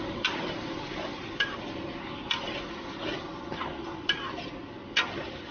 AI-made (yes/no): no